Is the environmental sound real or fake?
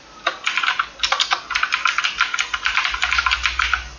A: real